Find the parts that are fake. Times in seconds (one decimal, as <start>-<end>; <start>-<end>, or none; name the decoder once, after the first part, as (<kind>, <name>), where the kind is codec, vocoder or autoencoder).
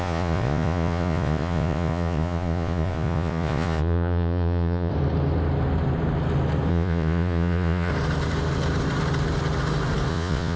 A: 0.0-4.9 (vocoder, Vocos); 6.7-7.9; 10.1-10.6